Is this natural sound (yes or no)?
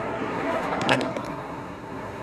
no